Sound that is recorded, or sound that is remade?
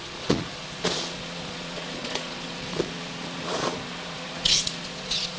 remade